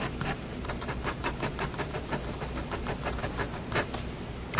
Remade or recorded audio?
remade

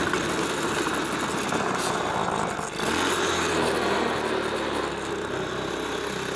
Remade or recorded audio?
recorded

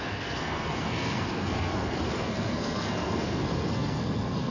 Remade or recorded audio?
remade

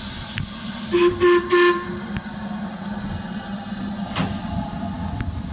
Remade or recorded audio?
recorded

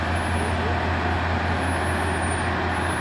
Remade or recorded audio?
recorded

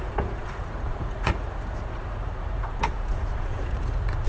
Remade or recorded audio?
remade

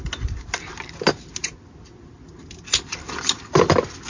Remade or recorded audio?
recorded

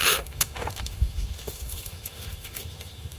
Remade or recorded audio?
remade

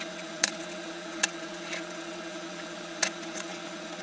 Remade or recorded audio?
remade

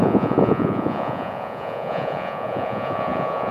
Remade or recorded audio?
remade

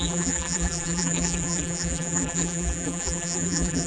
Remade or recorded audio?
remade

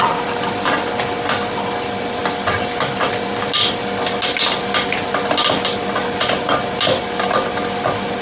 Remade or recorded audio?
recorded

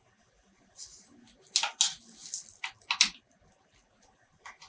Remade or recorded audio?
recorded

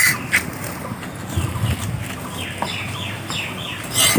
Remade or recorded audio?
recorded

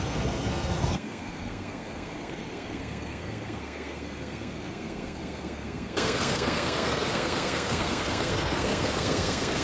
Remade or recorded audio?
remade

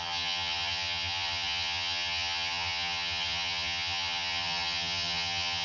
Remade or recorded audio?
remade